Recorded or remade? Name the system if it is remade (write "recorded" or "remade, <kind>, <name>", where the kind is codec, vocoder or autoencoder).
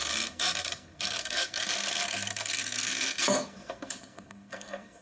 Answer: remade, codec, SNAC